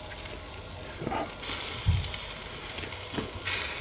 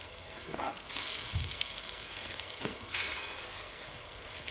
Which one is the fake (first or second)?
second